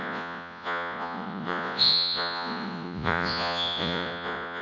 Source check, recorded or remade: remade